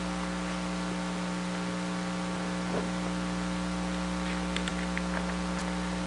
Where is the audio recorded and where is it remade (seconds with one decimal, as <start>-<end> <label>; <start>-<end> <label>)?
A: 0.0-6.1 recorded